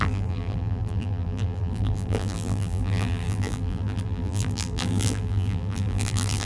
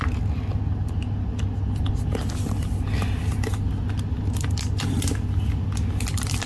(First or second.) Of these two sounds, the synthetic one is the first